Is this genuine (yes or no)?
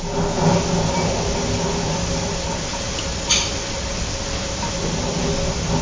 yes